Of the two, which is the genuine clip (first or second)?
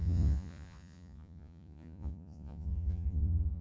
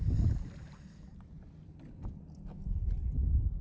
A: second